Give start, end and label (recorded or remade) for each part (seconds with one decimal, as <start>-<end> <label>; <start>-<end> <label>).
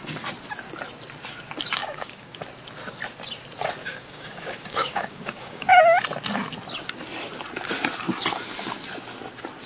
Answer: 0.0-1.8 recorded; 1.8-2.4 remade; 2.4-3.8 recorded; 3.8-5.8 remade; 5.8-9.7 recorded